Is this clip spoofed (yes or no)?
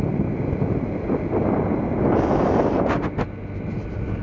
no